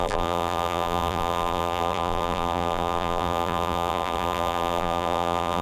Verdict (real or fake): fake